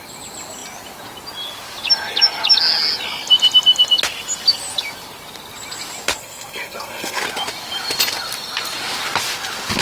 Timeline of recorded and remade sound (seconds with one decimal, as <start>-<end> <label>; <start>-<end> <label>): 0.0-6.2 recorded; 6.2-7.2 remade; 7.2-9.8 recorded

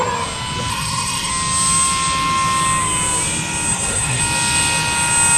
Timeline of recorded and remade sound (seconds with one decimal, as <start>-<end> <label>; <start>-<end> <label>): 0.0-0.7 recorded; 0.7-1.3 remade; 1.3-3.7 recorded; 3.7-4.2 remade; 4.2-5.4 recorded

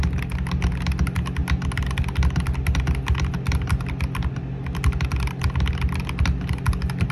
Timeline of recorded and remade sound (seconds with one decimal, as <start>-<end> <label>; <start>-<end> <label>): 0.0-7.1 recorded

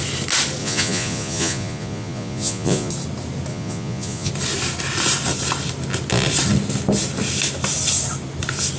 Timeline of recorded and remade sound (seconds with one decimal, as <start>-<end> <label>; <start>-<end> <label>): 0.0-0.6 recorded; 0.6-2.9 remade; 2.9-3.5 recorded; 3.5-4.3 remade; 4.3-8.8 recorded